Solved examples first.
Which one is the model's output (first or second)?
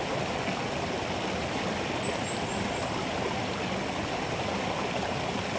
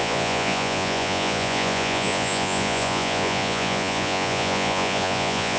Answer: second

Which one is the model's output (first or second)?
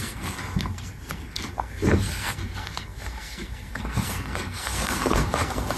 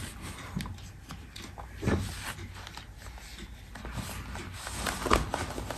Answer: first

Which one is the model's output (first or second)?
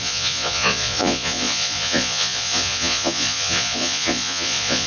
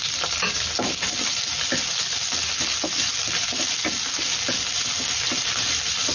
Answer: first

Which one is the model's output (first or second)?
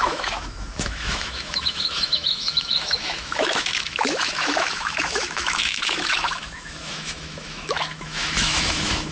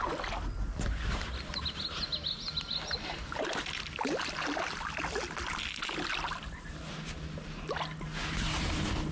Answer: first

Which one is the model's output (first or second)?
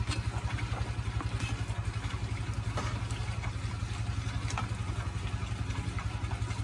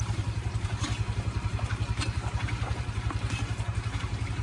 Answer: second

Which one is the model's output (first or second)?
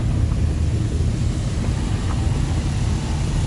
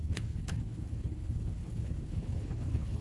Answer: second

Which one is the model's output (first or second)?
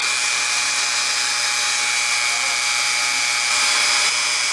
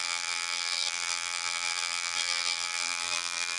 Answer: second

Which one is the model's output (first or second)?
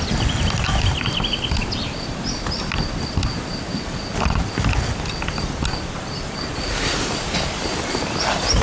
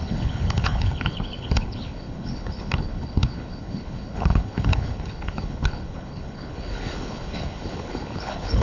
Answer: second